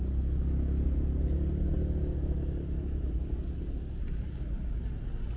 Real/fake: real